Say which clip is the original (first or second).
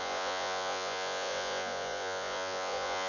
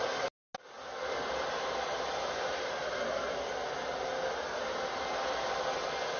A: second